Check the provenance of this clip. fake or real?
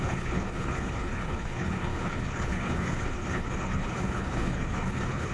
fake